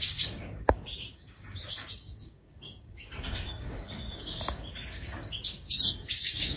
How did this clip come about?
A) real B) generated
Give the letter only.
B